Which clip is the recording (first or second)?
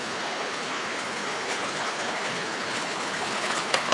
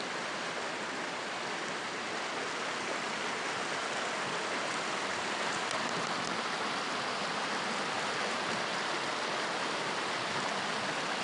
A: second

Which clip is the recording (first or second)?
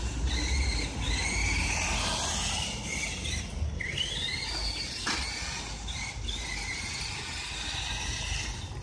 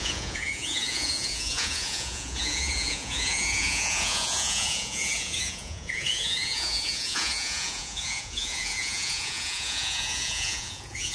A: first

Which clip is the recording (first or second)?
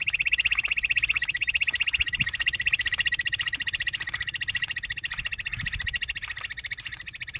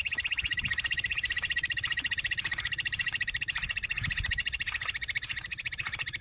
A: first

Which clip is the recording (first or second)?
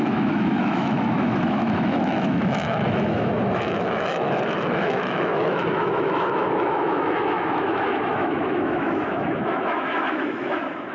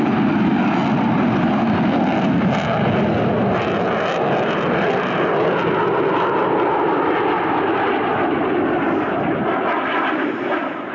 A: second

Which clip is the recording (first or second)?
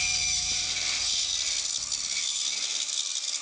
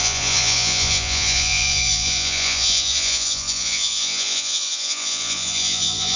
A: first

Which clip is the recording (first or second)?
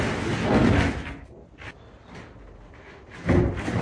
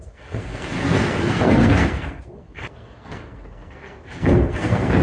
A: first